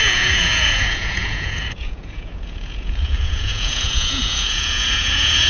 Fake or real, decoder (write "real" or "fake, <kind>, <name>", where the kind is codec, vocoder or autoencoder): fake, vocoder, Vocos